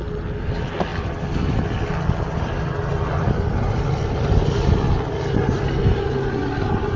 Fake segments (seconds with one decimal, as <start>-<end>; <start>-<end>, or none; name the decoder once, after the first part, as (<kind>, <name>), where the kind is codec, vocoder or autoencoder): none

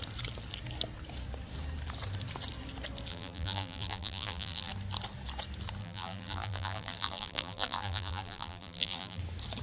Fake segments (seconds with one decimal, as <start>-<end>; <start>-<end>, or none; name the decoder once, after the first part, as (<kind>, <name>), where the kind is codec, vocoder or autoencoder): 3.1-4.7 (vocoder, BigVGAN v2); 5.8-9.2

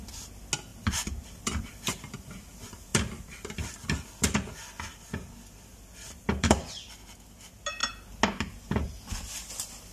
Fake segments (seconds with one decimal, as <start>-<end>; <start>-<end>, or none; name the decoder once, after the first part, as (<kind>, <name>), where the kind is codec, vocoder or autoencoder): 0.7-1.6 (vocoder, BigVGAN v2); 2.9-6.9